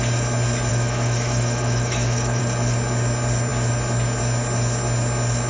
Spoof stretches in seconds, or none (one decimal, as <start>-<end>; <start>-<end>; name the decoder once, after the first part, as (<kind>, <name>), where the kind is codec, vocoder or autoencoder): 0.7-2.4 (autoencoder, DAC-VAE)